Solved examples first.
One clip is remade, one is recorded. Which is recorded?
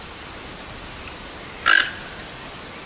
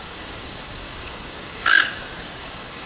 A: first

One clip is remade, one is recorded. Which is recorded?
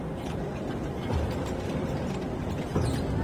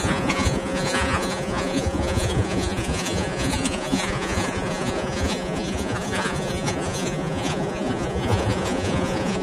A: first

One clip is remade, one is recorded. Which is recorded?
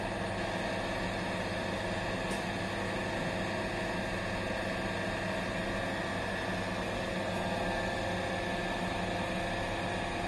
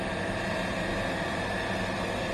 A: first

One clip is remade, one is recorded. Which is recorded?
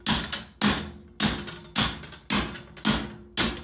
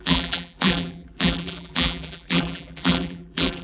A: first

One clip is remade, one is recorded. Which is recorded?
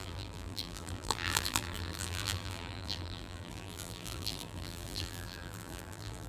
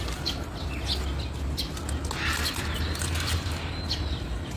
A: second